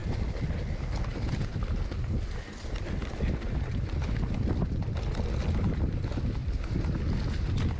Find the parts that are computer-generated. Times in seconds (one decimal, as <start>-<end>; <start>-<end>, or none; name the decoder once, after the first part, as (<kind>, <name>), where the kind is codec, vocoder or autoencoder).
6.4-7.0 (vocoder, BigVGAN v2)